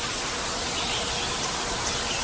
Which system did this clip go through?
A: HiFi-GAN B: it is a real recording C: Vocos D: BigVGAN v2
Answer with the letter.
B